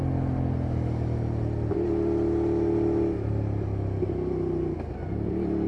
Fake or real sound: real